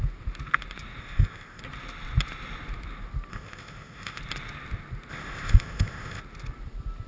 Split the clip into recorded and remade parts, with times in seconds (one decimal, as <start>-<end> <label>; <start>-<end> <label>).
0.0-1.0 recorded; 1.0-1.6 remade; 1.6-3.3 recorded; 3.3-4.2 remade; 4.2-5.1 recorded; 5.1-6.2 remade; 6.2-7.1 recorded